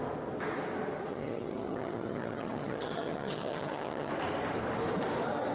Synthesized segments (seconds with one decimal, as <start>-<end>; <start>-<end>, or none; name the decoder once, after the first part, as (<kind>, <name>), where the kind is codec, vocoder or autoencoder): 1.1-4.1 (vocoder, HiFi-GAN)